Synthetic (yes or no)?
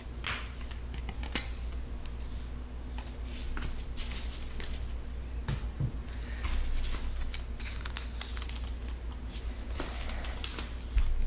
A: no